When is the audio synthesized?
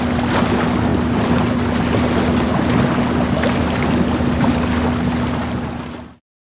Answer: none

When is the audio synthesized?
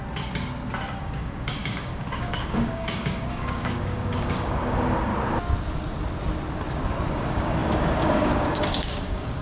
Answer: 1.0-5.1 (codec, DAC); 7.1-9.4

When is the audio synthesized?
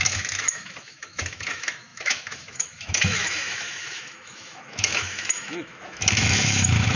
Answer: 0.0-7.0 (autoencoder, DAC-VAE)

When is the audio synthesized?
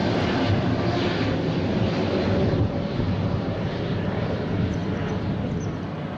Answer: none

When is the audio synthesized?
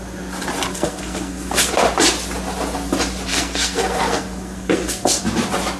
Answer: 0.7-1.7 (codec, SNAC); 3.3-5.2